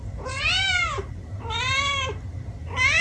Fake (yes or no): yes